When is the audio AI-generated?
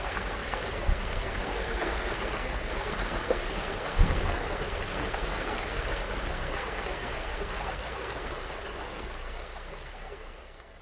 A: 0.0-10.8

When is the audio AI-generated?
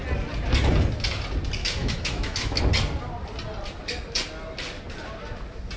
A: 1.6-2.6